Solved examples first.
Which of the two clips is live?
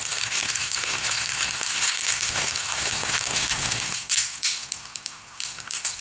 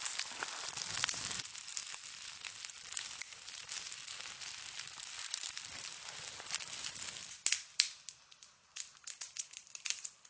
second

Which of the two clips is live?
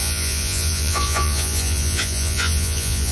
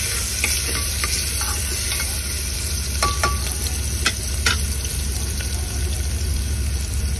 second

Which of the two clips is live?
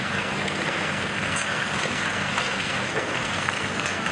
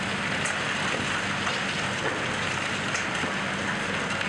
second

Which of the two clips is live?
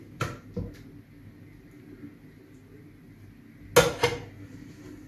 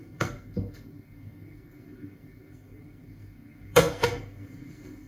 first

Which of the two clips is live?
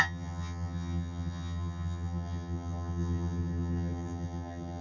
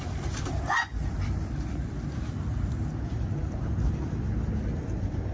second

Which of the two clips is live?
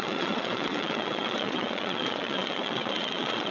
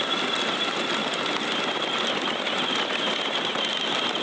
second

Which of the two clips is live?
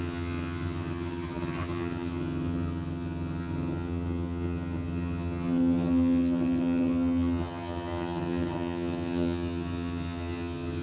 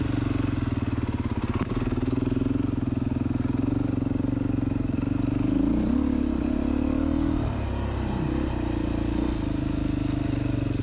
second